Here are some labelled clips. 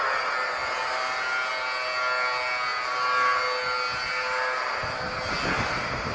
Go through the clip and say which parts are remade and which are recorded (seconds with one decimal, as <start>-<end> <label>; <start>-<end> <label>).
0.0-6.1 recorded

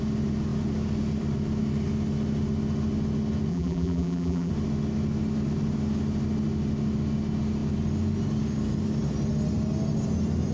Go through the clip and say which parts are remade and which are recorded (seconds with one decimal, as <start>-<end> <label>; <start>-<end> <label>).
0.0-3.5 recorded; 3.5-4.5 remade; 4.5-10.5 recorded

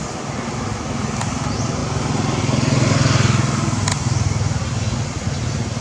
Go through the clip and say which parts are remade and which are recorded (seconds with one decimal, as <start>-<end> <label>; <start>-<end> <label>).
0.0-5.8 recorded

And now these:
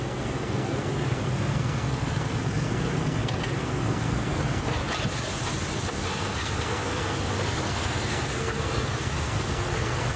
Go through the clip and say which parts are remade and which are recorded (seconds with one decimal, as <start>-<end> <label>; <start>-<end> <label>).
0.0-4.8 remade; 4.8-5.9 recorded; 5.9-10.2 remade

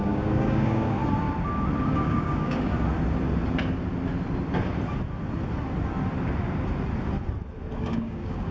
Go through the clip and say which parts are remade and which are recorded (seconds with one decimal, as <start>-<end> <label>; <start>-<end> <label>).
0.0-1.0 remade; 1.0-1.8 recorded; 1.8-2.7 remade; 2.7-7.8 recorded; 7.8-8.5 remade